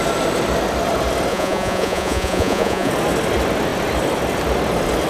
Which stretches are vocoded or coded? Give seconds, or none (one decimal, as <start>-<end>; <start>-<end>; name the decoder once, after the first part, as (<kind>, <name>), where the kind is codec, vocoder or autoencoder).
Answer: 1.3-2.9 (vocoder, Vocos)